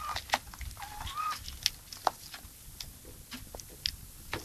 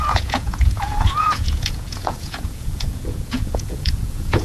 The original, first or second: first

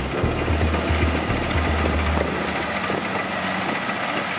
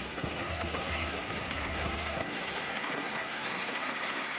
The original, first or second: first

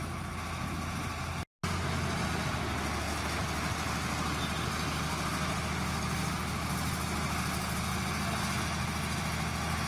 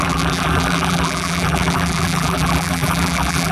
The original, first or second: first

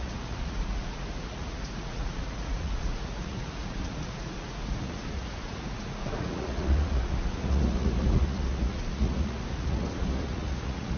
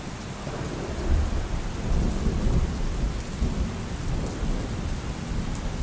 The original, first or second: second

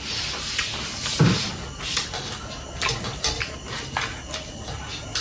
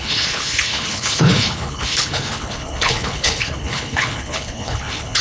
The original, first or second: first